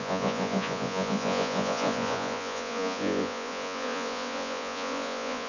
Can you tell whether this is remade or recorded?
remade